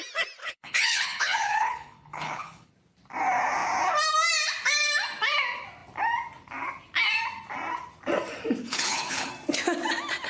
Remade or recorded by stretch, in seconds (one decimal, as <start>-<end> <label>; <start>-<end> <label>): 0.0-0.4 recorded; 0.4-2.7 remade; 2.7-8.6 recorded; 8.6-9.3 remade; 9.3-10.3 recorded